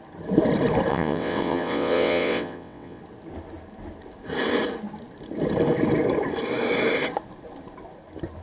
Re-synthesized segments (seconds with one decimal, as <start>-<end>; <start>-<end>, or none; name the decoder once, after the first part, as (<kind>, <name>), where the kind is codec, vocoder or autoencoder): 0.9-3.0 (vocoder, WaveNeXt)